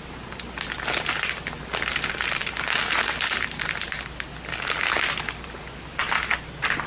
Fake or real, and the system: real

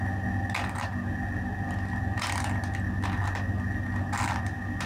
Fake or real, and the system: real